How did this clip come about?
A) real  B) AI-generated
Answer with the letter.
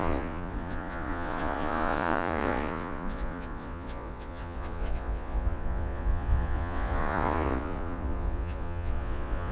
B